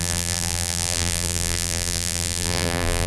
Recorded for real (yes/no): no